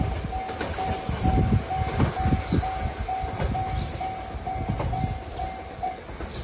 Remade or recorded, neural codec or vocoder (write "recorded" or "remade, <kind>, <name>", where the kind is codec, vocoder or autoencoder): recorded